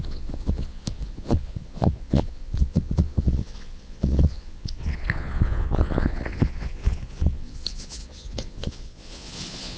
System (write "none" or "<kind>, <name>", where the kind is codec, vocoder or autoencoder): vocoder, Vocos